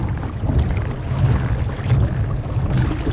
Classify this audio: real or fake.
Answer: real